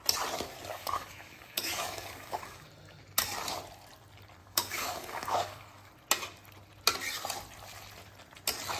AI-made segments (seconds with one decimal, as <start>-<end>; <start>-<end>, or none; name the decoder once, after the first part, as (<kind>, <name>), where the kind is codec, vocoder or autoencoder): 0.7-2.7 (codec, DAC); 4.4-5.9